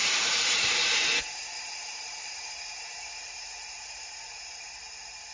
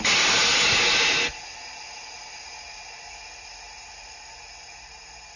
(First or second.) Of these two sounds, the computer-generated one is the first